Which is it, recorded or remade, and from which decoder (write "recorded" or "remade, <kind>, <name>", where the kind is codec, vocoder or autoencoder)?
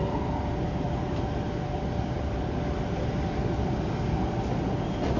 recorded